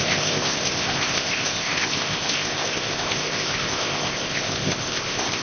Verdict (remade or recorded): remade